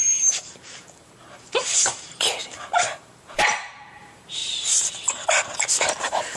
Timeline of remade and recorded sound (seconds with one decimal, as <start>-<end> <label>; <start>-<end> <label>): 0.0-6.4 remade